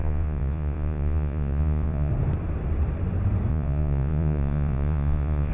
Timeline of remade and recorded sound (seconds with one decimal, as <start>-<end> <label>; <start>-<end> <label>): 0.0-2.1 remade; 2.1-3.5 recorded; 3.5-5.5 remade